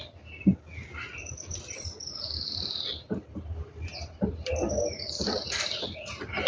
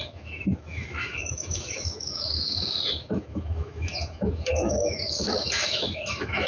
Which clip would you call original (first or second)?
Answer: first